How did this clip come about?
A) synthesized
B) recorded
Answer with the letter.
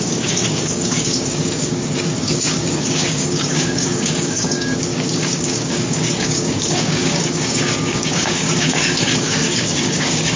A